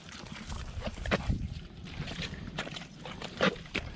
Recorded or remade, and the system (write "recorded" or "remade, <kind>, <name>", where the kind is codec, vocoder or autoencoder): remade, vocoder, BigVGAN v2